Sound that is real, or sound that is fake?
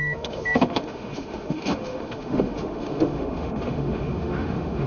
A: fake